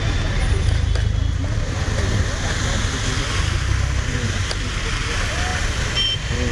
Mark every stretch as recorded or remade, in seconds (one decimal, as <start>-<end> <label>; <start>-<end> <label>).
0.0-5.5 recorded; 5.5-6.5 remade